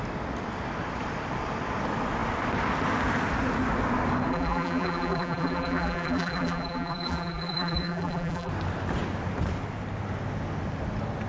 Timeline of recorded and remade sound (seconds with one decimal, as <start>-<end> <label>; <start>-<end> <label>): 0.0-4.3 recorded; 4.3-8.5 remade; 8.5-11.3 recorded